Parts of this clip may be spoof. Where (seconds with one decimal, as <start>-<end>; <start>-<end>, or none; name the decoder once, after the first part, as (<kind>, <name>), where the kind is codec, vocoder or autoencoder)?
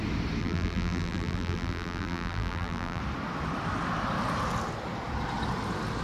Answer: 0.4-3.0 (vocoder, BigVGAN v2)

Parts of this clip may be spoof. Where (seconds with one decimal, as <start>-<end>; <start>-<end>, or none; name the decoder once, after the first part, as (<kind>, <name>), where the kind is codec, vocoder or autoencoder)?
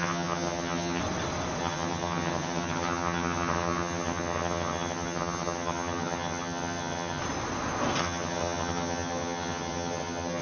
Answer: 0.0-1.0 (vocoder, HiFi-GAN); 1.6-7.2; 8.0-10.4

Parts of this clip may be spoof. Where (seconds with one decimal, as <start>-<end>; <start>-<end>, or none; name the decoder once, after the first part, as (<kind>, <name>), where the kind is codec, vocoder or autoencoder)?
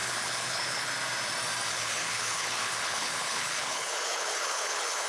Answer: 0.0-0.9 (codec, HILCodec); 1.7-5.1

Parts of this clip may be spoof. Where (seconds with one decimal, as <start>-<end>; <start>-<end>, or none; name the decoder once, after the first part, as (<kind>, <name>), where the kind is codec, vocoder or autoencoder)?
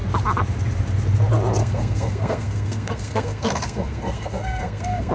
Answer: 1.6-5.1 (codec, SNAC)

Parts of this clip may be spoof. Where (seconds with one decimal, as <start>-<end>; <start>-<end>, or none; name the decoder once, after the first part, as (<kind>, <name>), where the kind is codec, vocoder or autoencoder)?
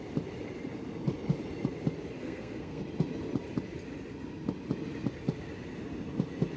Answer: 2.2-2.8 (codec, SNAC)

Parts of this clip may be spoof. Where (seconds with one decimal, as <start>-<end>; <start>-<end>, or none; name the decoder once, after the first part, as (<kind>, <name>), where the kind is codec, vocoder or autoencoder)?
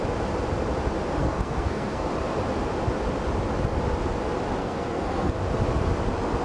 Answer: 1.2-2.1 (codec, SNAC); 4.6-5.3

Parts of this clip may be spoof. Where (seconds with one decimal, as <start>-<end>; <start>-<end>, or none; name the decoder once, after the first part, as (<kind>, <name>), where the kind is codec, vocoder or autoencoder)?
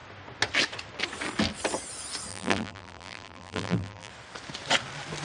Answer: 2.3-4.1 (vocoder, BigVGAN v2)